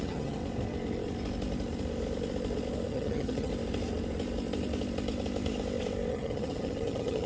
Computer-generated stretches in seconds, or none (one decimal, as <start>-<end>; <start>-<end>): 0.0-0.4; 2.9-3.5; 6.1-7.3